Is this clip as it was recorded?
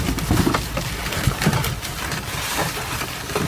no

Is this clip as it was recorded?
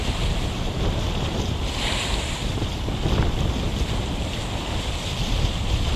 yes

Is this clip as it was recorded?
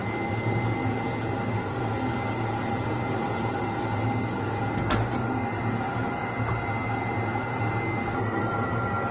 yes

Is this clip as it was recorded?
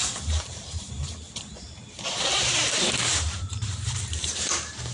no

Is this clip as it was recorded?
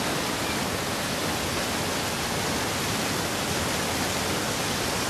yes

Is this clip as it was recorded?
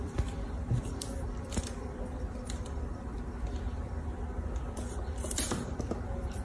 no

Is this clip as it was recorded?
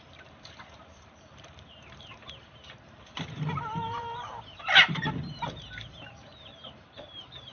no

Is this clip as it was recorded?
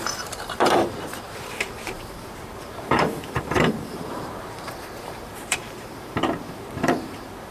no